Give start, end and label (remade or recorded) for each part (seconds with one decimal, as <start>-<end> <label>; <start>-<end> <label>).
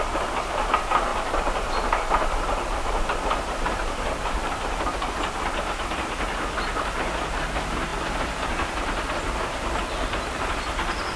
0.0-1.1 recorded; 1.1-4.5 remade; 4.5-7.9 recorded; 7.9-11.2 remade